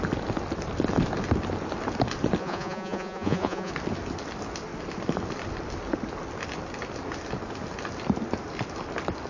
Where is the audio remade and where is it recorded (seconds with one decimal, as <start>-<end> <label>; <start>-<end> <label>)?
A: 0.0-2.4 recorded; 2.4-3.7 remade; 3.7-9.3 recorded